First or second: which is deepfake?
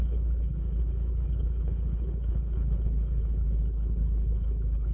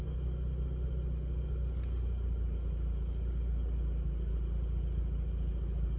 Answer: first